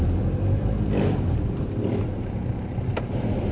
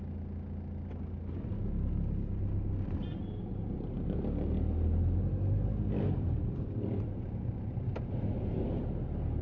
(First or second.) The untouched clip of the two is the second